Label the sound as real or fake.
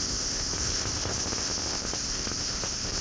fake